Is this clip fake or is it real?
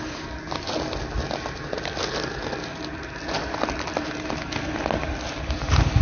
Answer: real